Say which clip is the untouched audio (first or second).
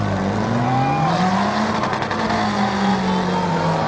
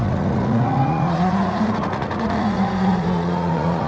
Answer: first